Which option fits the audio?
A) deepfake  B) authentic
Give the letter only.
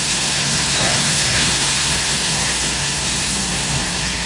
A